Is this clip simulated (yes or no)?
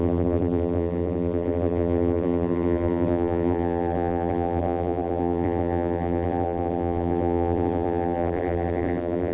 yes